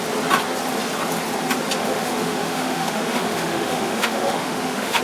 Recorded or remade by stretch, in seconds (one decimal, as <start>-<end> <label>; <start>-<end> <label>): 0.0-1.8 recorded; 1.8-5.0 remade